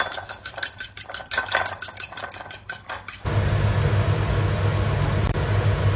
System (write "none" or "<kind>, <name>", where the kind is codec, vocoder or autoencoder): none